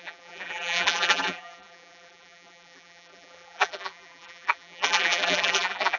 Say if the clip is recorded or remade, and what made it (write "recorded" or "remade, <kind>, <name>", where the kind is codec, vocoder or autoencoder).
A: remade, vocoder, BigVGAN v2